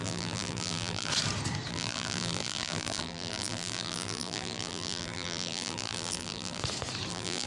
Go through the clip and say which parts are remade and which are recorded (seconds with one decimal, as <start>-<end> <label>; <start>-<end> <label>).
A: 0.0-1.1 remade; 1.1-1.7 recorded; 1.7-6.6 remade; 6.6-7.1 recorded; 7.1-7.5 remade